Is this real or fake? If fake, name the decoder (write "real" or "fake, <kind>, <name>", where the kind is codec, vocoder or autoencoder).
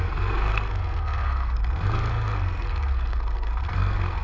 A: fake, codec, SNAC